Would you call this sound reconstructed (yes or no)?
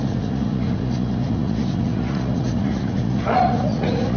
yes